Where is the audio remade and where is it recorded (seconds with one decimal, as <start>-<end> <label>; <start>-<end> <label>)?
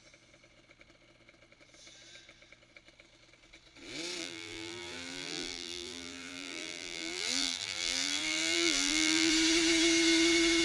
0.0-4.2 recorded; 4.2-9.3 remade; 9.3-10.6 recorded